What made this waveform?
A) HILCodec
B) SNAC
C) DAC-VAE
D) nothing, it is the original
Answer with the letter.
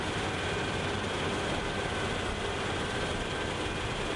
D